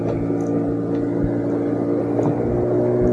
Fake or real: real